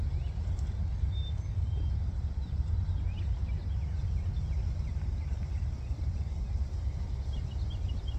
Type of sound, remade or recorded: recorded